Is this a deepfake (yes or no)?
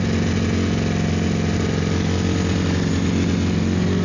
no